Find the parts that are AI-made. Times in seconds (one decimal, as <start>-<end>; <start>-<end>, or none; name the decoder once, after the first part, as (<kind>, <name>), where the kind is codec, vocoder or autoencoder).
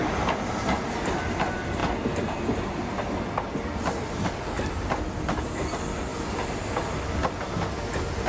none